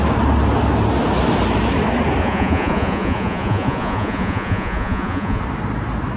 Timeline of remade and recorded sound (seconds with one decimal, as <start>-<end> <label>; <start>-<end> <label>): 0.0-2.2 recorded; 2.2-5.4 remade; 5.4-6.2 recorded